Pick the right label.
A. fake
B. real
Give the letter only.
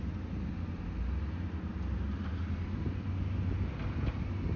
B